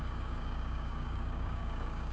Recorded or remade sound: remade